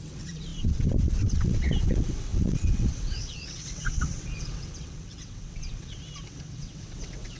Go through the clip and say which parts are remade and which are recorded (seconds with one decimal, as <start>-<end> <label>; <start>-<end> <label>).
0.0-7.4 remade